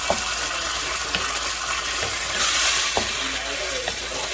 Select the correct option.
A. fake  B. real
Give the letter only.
B